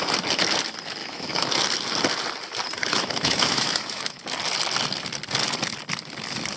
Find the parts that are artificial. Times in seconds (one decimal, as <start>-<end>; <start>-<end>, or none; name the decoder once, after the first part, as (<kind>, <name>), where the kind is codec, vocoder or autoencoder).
1.0-1.6 (autoencoder, DAC-VAE); 2.8-4.2